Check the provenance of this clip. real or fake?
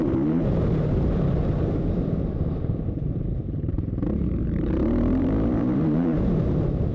fake